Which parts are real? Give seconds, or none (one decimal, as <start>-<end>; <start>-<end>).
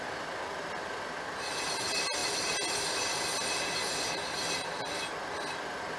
0.0-2.2; 5.0-6.0